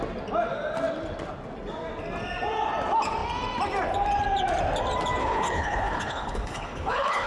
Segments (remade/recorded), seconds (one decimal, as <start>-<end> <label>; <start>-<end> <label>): 0.0-5.2 recorded; 5.2-7.3 remade